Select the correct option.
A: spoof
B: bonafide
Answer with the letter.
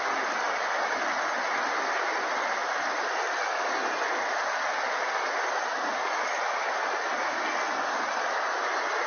B